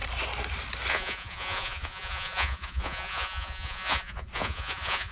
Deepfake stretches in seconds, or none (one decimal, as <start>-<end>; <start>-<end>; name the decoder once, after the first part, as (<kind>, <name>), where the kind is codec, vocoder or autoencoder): 0.9-5.1 (vocoder, Vocos)